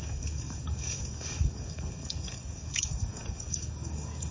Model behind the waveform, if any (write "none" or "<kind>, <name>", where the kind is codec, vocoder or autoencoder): codec, DAC